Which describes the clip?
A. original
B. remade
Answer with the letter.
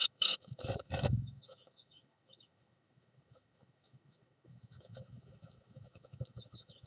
B